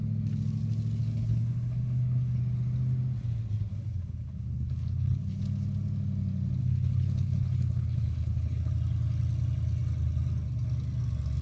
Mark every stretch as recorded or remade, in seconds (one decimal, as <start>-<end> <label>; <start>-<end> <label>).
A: 0.0-1.0 recorded; 1.0-2.4 remade; 2.4-3.7 recorded; 3.7-5.4 remade; 5.4-6.6 recorded; 6.6-8.7 remade; 8.7-11.4 recorded